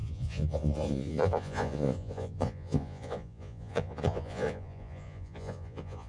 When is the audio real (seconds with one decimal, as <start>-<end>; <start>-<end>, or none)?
none